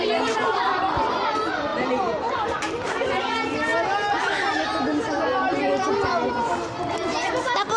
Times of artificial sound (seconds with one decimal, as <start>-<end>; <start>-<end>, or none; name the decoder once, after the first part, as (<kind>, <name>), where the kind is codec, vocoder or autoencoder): 1.7-3.2 (vocoder, BigVGAN v2)